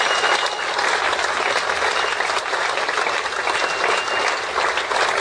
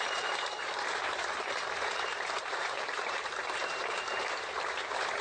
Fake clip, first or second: second